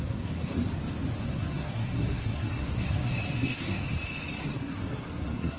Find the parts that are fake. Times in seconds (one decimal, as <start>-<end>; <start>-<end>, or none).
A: 0.0-0.6; 1.2-3.8; 4.4-5.6